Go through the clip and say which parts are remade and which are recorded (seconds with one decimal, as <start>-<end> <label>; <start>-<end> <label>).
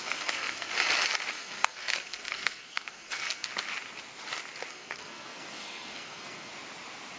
0.0-0.7 remade; 0.7-1.3 recorded; 1.3-3.5 remade; 3.5-4.7 recorded; 4.7-6.5 remade; 6.5-7.2 recorded